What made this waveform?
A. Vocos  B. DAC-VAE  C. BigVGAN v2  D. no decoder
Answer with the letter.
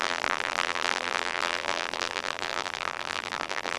C